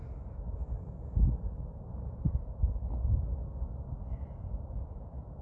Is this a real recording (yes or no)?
yes